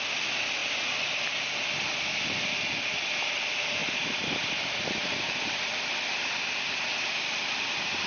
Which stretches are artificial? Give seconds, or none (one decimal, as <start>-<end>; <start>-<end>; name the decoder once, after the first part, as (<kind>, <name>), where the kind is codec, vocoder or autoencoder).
3.8-4.6 (vocoder, BigVGAN v2)